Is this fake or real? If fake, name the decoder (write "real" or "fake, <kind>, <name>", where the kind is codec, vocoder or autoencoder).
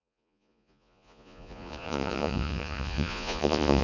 fake, vocoder, Vocos